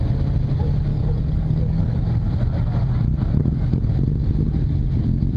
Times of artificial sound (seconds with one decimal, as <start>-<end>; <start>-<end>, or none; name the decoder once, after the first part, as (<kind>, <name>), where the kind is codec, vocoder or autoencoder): 0.9-2.0 (codec, DAC); 3.4-3.9